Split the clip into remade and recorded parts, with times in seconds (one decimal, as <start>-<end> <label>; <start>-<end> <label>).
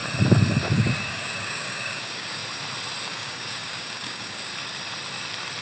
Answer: 0.0-0.6 recorded; 0.6-2.4 remade; 2.4-3.0 recorded; 3.0-4.5 remade; 4.5-5.6 recorded